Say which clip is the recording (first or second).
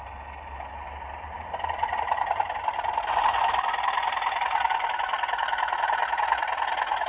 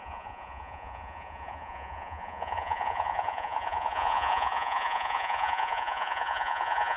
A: first